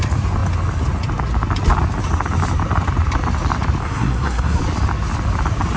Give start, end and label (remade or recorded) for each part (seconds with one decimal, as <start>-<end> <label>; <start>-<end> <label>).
0.0-3.8 recorded; 3.8-4.6 remade; 4.6-5.8 recorded